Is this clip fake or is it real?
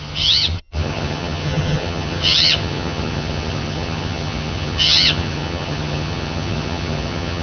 fake